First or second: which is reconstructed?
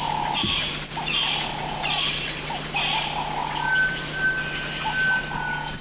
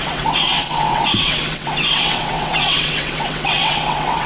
second